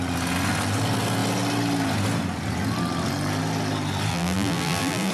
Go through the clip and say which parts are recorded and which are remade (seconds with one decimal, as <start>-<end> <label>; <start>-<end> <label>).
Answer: 0.0-4.1 recorded; 4.1-5.1 remade